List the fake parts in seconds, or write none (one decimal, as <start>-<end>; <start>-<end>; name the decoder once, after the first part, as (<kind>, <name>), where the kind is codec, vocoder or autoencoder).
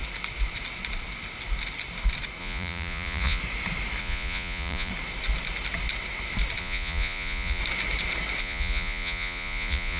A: 2.4-3.4 (vocoder, Vocos); 4.0-4.9; 6.6-7.6; 8.4-10.0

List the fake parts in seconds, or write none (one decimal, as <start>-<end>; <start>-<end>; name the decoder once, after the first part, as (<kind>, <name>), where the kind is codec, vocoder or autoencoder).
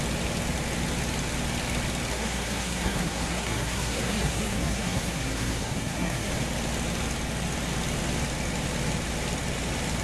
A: 2.1-6.3 (codec, SNAC)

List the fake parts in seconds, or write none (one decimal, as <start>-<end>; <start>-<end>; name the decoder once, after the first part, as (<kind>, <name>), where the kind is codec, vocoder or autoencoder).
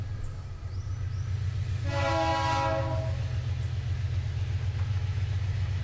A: 4.9-5.8 (autoencoder, DAC-VAE)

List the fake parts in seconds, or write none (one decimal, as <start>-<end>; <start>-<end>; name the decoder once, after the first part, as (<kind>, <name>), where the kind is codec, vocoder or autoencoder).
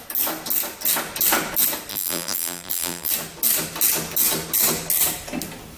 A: 1.9-3.1 (vocoder, BigVGAN v2)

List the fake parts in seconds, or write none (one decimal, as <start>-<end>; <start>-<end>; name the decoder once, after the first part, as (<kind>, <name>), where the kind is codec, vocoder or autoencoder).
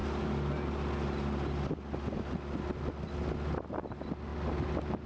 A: none